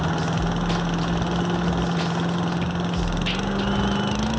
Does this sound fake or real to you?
real